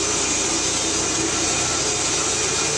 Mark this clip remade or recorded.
recorded